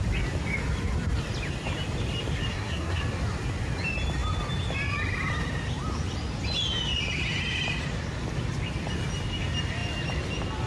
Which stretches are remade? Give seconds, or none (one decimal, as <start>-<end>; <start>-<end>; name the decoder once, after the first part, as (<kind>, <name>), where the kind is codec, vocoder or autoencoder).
2.5-3.0 (codec, SNAC)